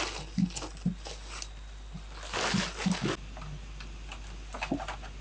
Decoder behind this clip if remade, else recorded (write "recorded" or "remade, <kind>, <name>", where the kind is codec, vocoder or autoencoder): recorded